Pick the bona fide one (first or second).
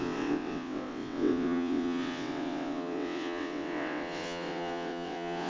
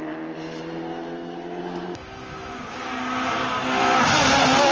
second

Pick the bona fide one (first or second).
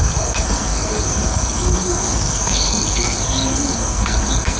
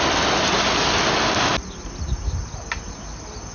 second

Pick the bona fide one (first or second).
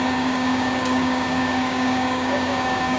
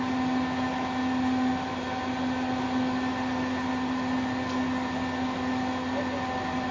second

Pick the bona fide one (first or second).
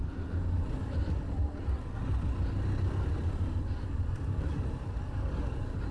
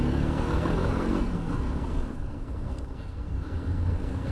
first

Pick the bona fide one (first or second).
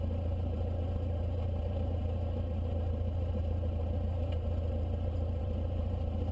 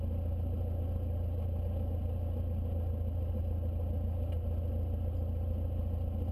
second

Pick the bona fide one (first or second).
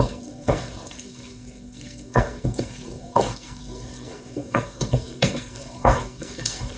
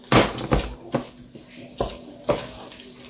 second